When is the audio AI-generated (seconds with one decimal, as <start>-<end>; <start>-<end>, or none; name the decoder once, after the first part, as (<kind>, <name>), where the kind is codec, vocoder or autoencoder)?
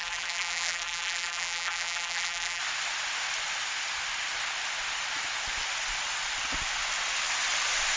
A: 0.0-2.6 (vocoder, BigVGAN v2)